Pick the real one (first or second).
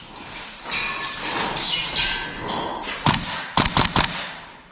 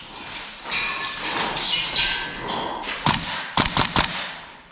first